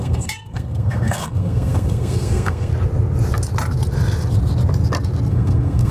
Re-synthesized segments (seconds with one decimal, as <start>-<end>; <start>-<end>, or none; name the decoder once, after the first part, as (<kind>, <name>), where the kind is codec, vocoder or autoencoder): 0.0-2.7 (codec, SNAC); 5.3-5.9